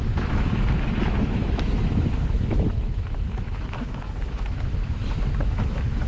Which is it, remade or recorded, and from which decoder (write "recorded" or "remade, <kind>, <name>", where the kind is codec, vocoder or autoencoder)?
remade, autoencoder, DAC-VAE